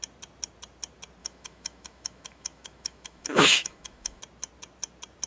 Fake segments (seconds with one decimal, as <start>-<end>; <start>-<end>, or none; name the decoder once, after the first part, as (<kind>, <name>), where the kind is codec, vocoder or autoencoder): 1.2-4.2 (autoencoder, DAC-VAE)